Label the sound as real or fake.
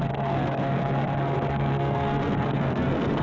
fake